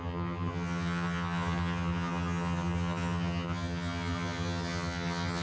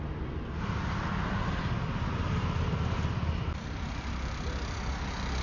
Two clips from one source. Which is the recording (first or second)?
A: second